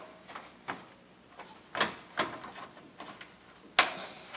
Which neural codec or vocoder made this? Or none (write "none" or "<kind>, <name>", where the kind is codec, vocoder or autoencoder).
none